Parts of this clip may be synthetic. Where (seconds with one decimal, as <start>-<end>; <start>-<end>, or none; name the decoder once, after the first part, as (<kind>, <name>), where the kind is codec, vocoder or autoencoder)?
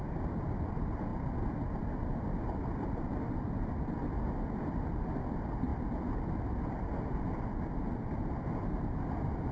none